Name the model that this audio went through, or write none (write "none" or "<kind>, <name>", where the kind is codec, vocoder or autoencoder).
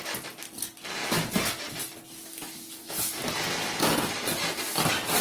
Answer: none